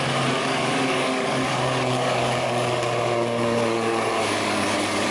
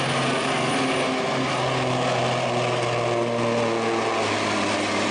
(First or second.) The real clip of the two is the second